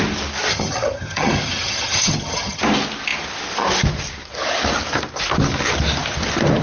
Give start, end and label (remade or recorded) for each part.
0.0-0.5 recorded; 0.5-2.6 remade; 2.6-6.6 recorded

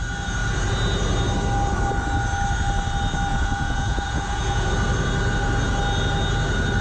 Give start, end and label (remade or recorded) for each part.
0.0-3.3 recorded; 3.3-4.7 remade; 4.7-6.8 recorded

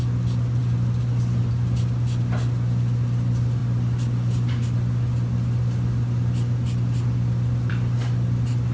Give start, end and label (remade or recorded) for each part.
0.0-8.7 recorded

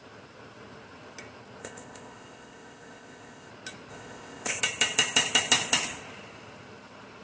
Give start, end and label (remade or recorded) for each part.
0.0-1.6 recorded; 1.6-3.5 remade; 3.5-3.9 recorded; 3.9-4.6 remade; 4.6-7.2 recorded

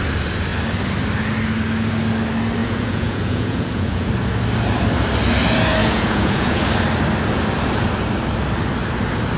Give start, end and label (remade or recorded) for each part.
0.0-2.6 recorded; 2.6-4.1 remade; 4.1-5.8 recorded; 5.8-6.6 remade; 6.6-9.4 recorded